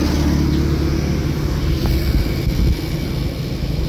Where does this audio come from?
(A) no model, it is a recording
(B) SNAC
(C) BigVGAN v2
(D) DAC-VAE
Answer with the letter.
A